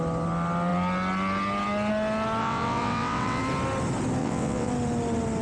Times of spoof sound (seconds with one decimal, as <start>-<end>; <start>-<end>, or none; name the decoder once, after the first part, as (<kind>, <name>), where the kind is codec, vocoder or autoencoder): 2.4-3.4 (vocoder, WaveNeXt); 4.2-4.7